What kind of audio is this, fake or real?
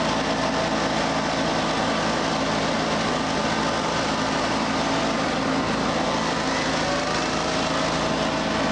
real